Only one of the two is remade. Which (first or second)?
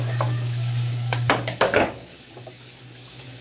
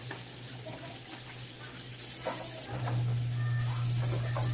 first